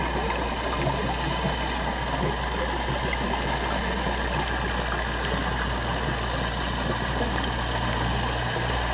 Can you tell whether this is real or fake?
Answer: real